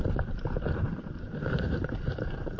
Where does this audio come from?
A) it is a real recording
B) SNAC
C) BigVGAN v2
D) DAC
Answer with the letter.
C